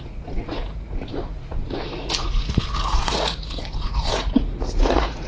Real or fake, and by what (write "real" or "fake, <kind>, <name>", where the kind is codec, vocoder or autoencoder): fake, vocoder, Vocos